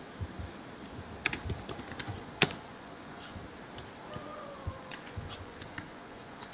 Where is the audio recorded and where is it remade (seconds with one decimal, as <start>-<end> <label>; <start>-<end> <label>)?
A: 0.0-2.1 recorded; 2.1-3.4 remade; 3.4-4.3 recorded; 4.3-6.5 remade